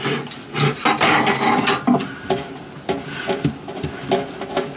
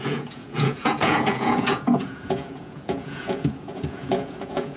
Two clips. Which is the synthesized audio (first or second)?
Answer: second